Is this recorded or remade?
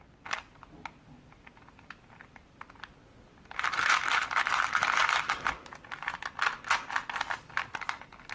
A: recorded